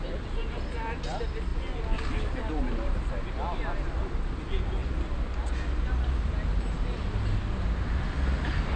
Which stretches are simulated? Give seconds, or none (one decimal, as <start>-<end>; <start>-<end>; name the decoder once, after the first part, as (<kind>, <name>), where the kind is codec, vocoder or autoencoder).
none